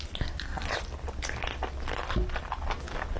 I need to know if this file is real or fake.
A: real